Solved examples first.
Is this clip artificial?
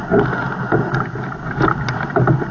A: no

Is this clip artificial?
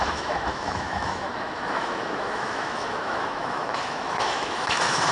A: yes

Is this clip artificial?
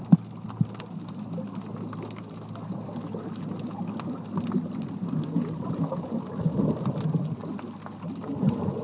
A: no